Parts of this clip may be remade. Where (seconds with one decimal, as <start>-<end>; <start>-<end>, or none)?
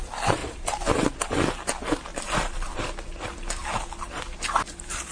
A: 0.4-1.3; 2.1-2.8